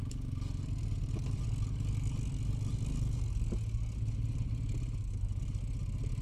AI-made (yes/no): no